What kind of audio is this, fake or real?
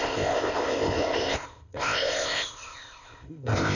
fake